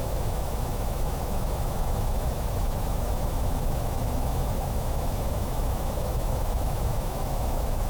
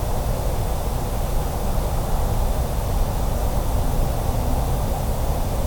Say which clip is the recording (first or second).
second